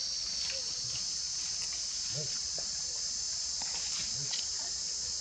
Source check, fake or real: real